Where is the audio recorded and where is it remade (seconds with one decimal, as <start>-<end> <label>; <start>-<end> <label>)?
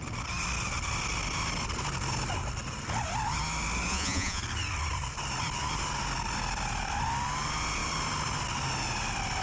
0.0-3.9 recorded; 3.9-4.4 remade; 4.4-9.4 recorded